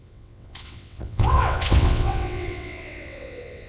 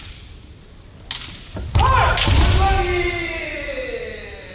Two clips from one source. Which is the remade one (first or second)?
first